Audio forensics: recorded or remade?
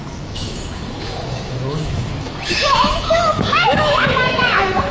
remade